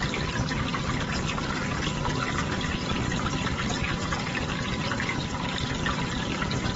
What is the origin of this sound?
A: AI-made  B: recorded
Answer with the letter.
B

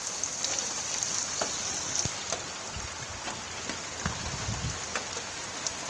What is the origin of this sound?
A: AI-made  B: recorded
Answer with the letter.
B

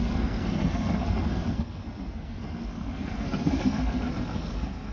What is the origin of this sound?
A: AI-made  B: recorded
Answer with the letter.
A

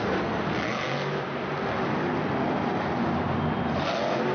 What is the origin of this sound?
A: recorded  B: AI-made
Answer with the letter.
A